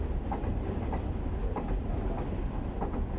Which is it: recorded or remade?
recorded